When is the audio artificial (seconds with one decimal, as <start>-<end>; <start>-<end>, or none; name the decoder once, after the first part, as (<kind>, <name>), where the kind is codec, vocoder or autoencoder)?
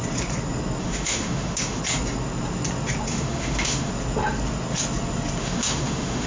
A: 0.8-1.8 (autoencoder, DAC-VAE); 3.1-3.9; 5.4-6.3